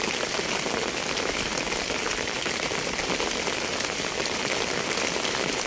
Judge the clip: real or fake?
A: real